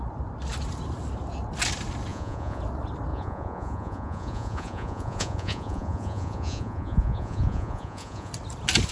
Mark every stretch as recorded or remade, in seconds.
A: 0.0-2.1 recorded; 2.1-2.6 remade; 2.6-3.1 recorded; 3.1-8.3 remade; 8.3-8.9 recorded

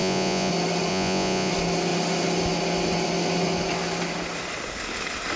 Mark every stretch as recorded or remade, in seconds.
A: 0.0-0.5 remade; 0.5-0.9 recorded; 0.9-1.5 remade; 1.5-5.4 recorded